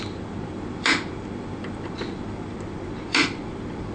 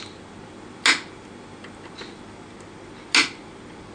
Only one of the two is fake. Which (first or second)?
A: first